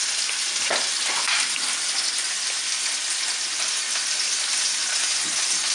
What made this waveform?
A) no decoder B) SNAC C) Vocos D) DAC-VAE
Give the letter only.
A